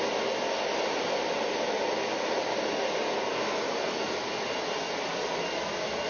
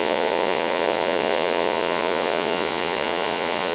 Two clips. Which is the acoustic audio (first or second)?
first